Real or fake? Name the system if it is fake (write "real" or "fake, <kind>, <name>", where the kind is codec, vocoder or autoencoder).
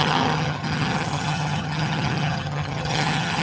fake, vocoder, HiFi-GAN